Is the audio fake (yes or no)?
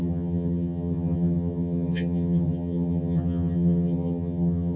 yes